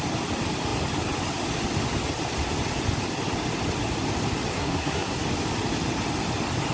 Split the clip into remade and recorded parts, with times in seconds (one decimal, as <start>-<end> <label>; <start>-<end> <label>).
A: 0.0-4.5 recorded; 4.5-5.2 remade; 5.2-6.7 recorded